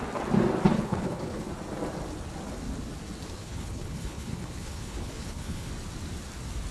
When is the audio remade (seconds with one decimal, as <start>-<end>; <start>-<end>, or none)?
0.7-1.5; 3.4-5.7